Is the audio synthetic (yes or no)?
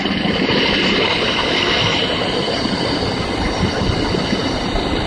no